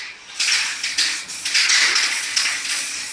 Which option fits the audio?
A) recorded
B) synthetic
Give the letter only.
B